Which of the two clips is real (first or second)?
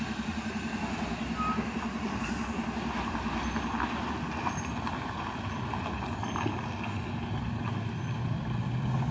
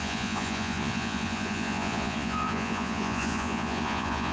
first